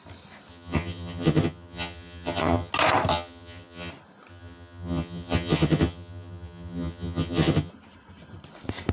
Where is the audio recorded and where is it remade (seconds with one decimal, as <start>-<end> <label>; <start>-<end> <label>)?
0.0-0.5 recorded; 0.5-2.7 remade; 2.7-3.1 recorded; 3.1-3.9 remade; 3.9-4.3 recorded; 4.3-7.7 remade; 7.7-8.9 recorded